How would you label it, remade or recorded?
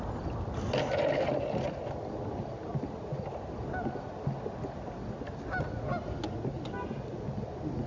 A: recorded